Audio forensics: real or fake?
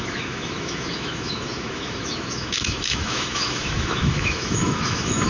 fake